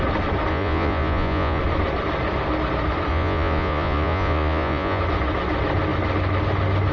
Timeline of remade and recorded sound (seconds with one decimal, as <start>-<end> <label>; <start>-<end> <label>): 0.0-0.5 recorded; 0.5-1.6 remade; 1.6-3.1 recorded; 3.1-5.0 remade; 5.0-6.9 recorded